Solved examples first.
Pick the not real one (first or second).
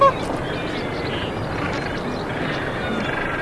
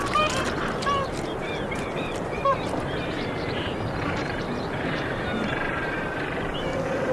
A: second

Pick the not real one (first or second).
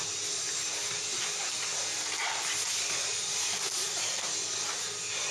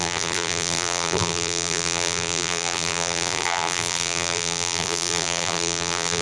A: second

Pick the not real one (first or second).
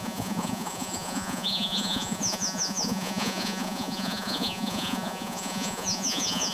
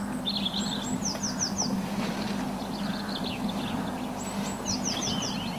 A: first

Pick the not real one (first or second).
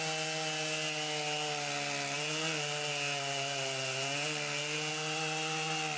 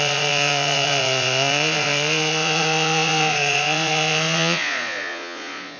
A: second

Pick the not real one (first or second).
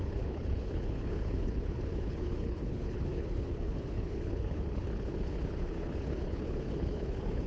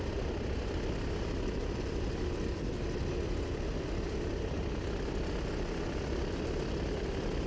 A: first